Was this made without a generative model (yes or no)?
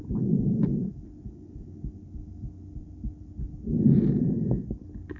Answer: yes